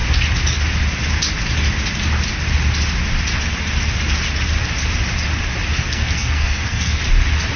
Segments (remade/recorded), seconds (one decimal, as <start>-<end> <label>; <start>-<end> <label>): 0.0-5.7 recorded; 5.7-7.0 remade; 7.0-7.6 recorded